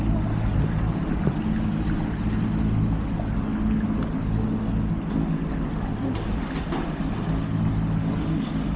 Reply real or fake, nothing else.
real